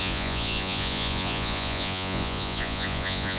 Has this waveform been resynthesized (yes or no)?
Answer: yes